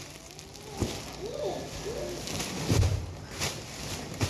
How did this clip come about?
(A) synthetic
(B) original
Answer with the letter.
B